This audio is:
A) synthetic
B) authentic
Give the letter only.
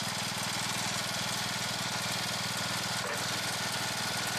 B